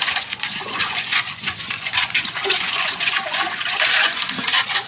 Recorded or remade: remade